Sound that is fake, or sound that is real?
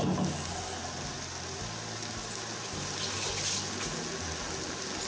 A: real